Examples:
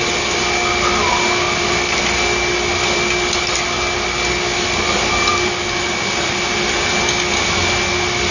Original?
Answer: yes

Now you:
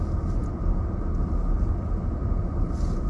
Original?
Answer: yes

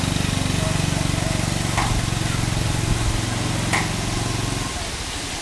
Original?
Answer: yes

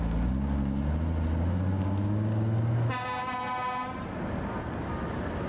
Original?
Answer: yes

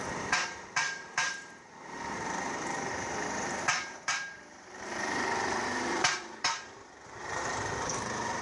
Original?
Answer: no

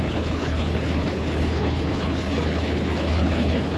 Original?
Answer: no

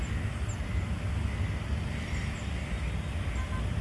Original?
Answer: yes